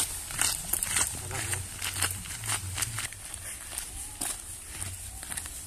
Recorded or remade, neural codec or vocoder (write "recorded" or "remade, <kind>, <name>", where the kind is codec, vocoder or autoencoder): recorded